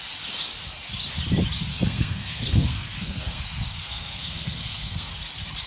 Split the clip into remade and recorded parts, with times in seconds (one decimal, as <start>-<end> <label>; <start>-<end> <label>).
0.0-1.7 recorded; 1.7-5.1 remade; 5.1-5.7 recorded